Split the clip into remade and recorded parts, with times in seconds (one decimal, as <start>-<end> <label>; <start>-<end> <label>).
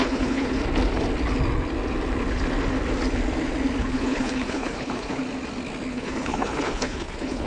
0.0-0.6 remade; 0.6-3.8 recorded; 3.8-5.2 remade; 5.2-5.9 recorded; 5.9-7.5 remade